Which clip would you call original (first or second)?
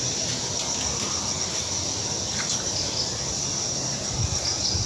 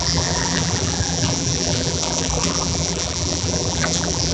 first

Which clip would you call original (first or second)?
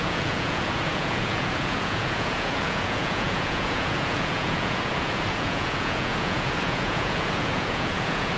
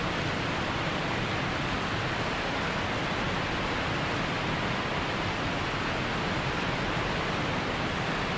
second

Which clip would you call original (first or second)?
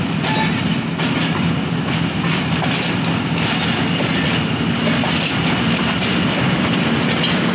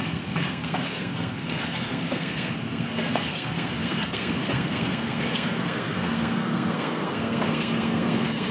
first